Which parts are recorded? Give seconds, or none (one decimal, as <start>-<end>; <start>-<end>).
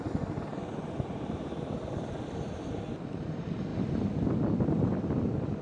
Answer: 0.0-5.6